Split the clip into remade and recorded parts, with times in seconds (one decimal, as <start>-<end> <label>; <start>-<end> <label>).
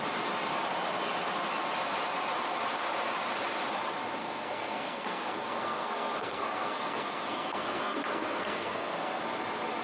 0.0-4.2 recorded; 4.2-9.2 remade; 9.2-9.8 recorded